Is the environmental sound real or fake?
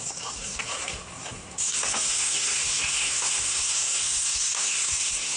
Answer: fake